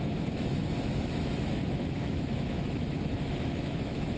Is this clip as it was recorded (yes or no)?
no